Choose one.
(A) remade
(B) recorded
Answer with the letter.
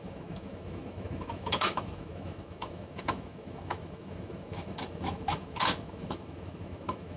A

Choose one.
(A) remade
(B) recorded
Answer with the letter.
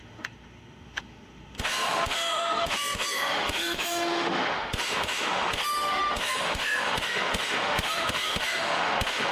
A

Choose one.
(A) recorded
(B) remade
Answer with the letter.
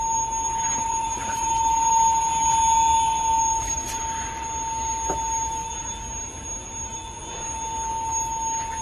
A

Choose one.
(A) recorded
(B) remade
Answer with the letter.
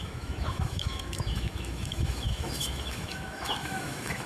B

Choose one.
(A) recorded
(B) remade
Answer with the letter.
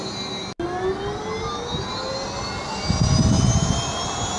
A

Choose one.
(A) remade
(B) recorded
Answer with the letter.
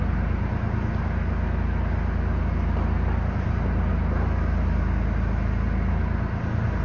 B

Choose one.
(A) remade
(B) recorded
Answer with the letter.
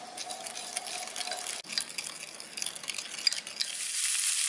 B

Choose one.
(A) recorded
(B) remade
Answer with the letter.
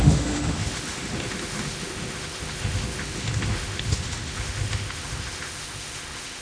B